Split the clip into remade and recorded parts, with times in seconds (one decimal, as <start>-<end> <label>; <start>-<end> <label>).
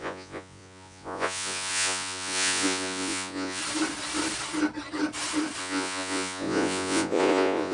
0.0-3.6 remade; 3.6-5.6 recorded; 5.6-7.7 remade